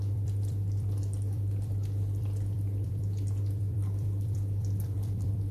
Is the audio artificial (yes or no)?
yes